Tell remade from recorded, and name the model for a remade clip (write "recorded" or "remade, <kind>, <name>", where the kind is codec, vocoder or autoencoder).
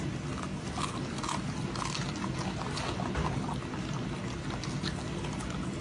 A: recorded